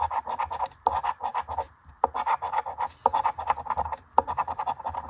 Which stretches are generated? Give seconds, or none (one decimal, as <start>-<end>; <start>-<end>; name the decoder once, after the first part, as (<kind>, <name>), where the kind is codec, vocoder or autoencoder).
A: none